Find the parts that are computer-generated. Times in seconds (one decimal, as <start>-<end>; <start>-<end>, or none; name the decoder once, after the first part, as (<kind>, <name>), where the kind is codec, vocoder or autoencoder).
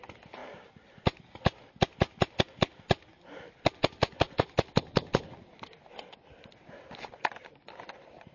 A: 3.1-3.7 (vocoder, BigVGAN v2)